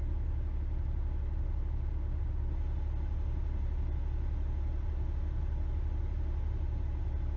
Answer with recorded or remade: recorded